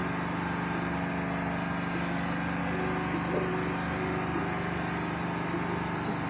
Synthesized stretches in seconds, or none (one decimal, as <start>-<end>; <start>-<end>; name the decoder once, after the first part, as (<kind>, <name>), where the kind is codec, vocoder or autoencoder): none